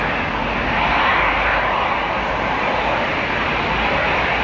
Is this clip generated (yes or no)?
no